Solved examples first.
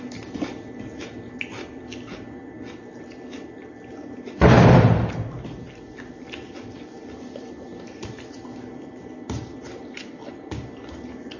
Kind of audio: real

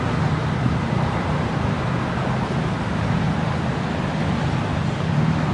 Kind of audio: real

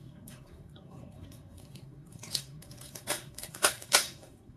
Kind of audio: fake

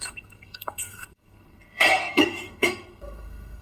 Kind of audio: fake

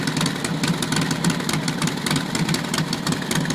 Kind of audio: real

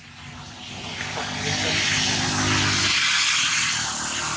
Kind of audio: real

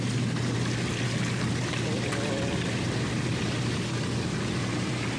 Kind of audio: real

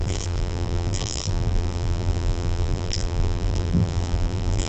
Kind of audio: fake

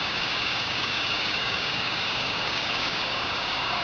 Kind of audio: fake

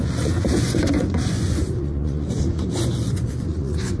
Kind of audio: fake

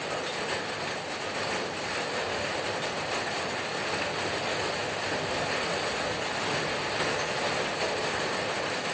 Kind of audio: real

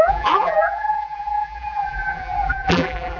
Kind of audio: fake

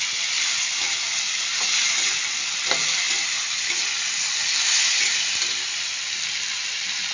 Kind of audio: real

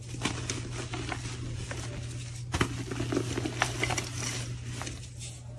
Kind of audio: real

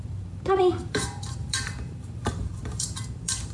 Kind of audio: fake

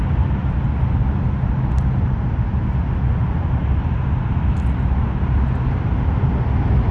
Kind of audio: real